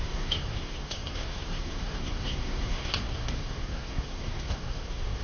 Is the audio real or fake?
fake